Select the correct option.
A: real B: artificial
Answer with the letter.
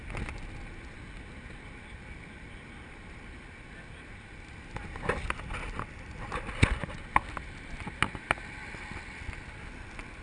A